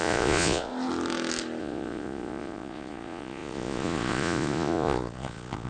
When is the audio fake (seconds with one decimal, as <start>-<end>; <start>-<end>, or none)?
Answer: 0.0-0.7; 1.6-5.7